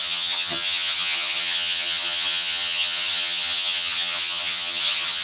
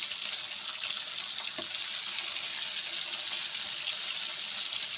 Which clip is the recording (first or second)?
second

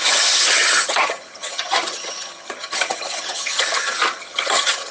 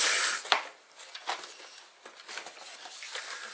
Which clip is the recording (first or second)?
second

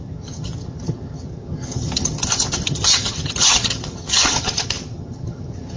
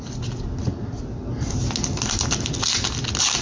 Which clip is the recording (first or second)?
second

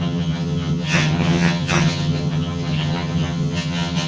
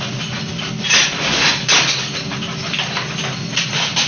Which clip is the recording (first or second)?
second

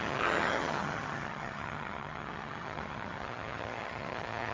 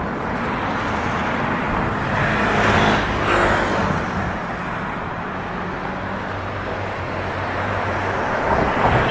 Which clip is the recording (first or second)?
second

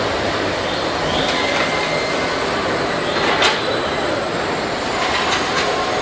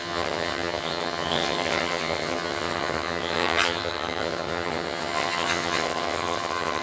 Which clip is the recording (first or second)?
first